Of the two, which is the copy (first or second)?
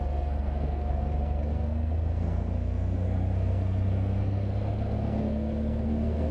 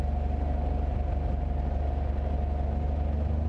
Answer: first